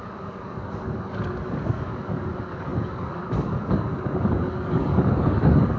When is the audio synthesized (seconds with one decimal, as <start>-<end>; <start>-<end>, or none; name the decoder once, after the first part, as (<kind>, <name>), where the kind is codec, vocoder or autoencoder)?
0.0-5.8 (codec, DAC)